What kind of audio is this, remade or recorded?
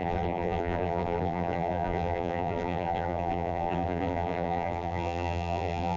remade